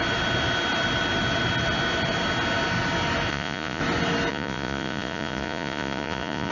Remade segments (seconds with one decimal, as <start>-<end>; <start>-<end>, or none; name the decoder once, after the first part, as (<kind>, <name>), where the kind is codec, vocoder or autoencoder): 3.3-3.8 (vocoder, Vocos); 4.3-6.5